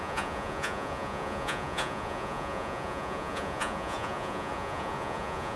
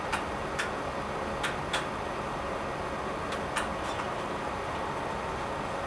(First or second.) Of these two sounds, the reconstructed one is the first